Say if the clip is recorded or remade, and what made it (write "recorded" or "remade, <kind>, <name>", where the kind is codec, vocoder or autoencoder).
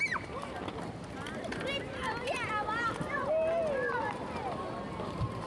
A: recorded